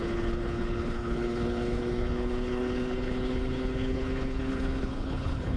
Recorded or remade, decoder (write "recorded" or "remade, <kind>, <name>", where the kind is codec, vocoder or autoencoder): remade, codec, HILCodec